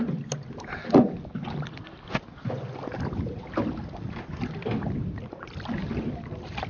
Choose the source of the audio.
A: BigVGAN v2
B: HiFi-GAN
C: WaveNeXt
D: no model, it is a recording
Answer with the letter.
D